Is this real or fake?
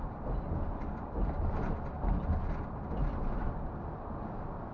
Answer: real